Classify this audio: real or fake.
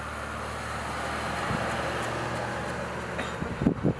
real